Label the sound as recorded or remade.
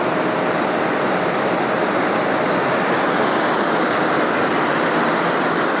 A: recorded